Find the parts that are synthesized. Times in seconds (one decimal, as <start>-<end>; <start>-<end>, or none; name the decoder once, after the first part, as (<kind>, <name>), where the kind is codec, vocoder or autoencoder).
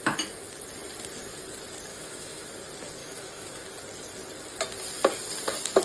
1.9-2.5 (autoencoder, DAC-VAE); 3.0-3.7